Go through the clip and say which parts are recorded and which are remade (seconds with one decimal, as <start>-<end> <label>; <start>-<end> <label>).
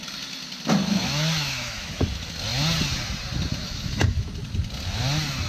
0.0-0.8 recorded; 0.8-2.0 remade; 2.0-3.6 recorded; 3.6-4.3 remade; 4.3-5.5 recorded